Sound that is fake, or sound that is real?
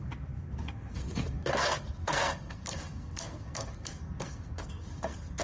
fake